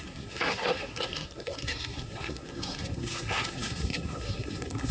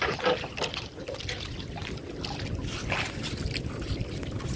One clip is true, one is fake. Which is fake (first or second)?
first